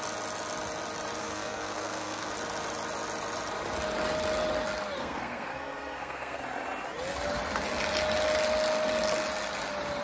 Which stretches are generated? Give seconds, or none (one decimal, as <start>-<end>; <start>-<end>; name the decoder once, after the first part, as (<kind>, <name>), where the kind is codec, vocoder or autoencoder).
1.2-2.3 (codec, SNAC); 5.0-6.4